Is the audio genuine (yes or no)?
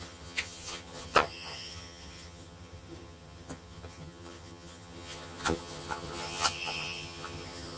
no